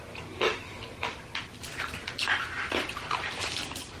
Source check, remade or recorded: remade